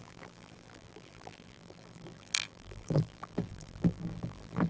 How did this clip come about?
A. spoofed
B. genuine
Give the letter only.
A